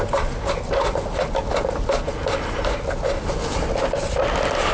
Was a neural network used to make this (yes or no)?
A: no